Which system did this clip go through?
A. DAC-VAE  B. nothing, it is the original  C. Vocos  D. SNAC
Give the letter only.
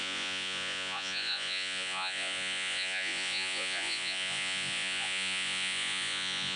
C